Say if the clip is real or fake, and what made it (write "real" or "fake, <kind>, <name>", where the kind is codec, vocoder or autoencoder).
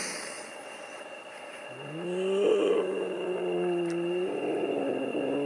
real